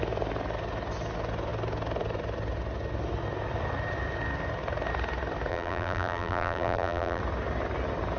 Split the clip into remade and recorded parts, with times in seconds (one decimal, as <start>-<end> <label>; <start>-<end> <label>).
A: 0.0-5.5 recorded; 5.5-7.2 remade; 7.2-8.2 recorded